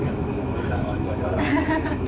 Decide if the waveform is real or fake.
fake